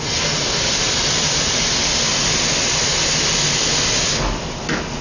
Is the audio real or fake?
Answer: real